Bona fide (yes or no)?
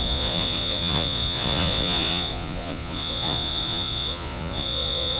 no